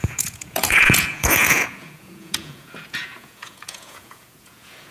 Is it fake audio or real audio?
fake